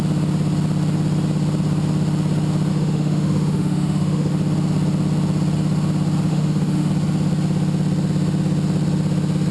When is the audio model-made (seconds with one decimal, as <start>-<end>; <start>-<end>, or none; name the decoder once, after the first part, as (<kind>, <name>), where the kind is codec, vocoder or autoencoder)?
2.7-4.3 (autoencoder, DAC-VAE); 6.3-6.9